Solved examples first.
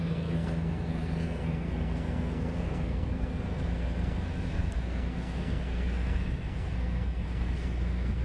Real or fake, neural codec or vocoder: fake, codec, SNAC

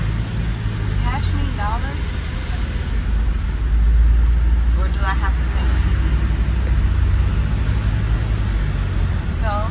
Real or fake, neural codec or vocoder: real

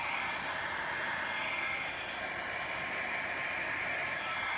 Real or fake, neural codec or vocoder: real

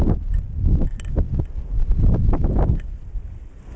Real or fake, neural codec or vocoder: real